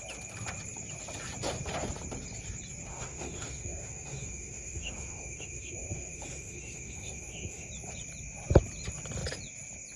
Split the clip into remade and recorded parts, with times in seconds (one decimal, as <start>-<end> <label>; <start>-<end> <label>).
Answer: 0.0-2.9 recorded; 2.9-7.7 remade; 7.7-10.0 recorded